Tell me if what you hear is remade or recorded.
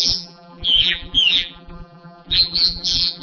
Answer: remade